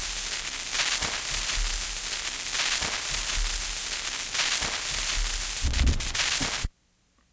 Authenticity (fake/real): real